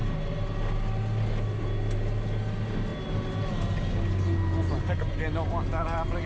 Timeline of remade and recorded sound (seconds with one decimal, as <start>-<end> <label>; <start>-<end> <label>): 0.0-6.3 recorded